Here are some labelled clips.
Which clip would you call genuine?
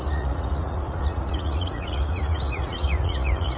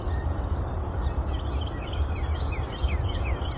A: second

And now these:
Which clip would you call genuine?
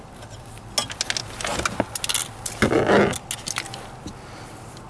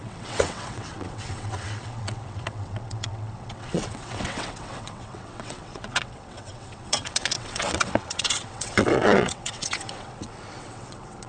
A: first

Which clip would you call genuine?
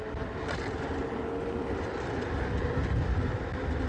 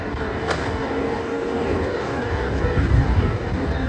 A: first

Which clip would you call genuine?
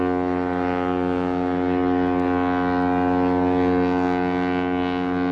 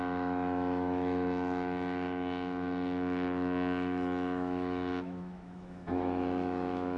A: first